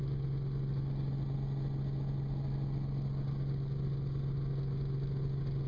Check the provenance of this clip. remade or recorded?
recorded